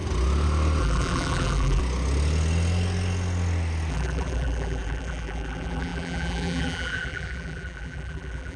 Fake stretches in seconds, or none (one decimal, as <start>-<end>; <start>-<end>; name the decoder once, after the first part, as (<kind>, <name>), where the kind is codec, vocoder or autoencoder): 0.8-1.8 (vocoder, BigVGAN v2); 3.9-8.6

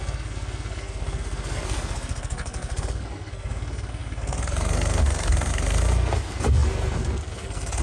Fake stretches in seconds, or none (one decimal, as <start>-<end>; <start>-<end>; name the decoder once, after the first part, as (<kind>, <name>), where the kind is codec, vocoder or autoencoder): 0.0-7.8 (codec, SNAC)

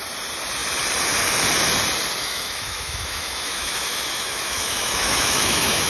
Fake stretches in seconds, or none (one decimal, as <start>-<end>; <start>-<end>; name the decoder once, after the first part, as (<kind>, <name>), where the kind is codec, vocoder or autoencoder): 2.2-5.9 (autoencoder, DAC-VAE)

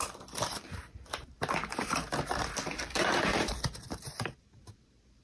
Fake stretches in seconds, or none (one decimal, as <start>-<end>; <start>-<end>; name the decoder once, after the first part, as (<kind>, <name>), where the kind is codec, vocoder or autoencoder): 0.0-5.2 (vocoder, BigVGAN v2)